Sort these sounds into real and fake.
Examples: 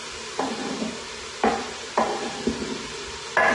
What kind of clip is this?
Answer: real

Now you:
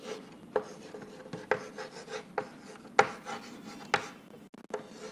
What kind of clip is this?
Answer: real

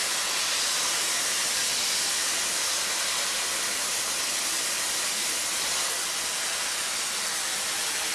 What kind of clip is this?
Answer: real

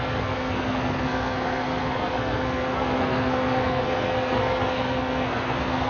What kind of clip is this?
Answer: fake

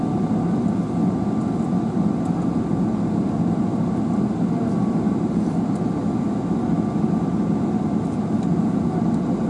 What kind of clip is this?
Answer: real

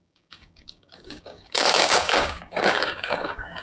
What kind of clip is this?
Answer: fake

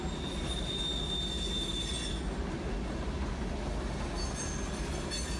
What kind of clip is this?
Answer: real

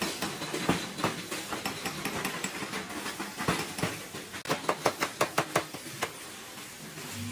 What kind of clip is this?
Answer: real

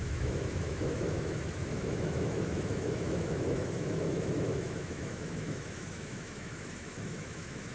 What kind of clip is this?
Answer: fake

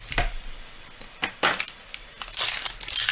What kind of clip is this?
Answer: real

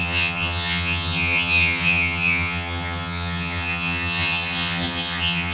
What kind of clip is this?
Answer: fake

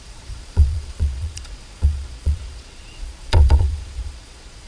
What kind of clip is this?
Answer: fake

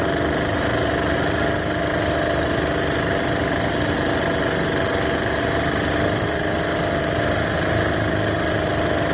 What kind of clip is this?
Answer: real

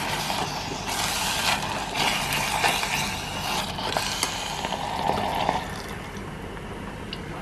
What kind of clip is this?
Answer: real